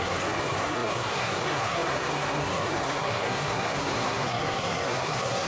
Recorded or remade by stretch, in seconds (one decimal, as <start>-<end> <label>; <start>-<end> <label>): 0.0-5.5 remade